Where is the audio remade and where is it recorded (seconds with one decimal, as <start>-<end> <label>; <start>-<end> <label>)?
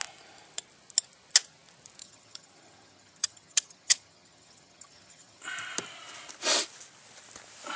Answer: 0.0-2.0 recorded; 2.0-5.4 remade; 5.4-7.8 recorded